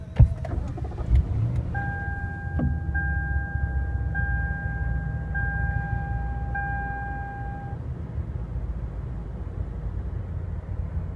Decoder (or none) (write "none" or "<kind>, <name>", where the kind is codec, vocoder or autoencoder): none